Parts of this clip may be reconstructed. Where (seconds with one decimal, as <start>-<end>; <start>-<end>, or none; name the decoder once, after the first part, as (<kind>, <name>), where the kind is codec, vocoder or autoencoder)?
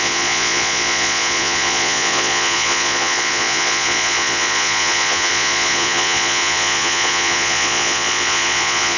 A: 0.0-9.0 (vocoder, Vocos)